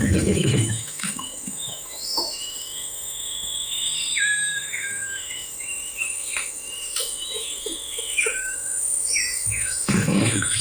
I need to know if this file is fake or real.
fake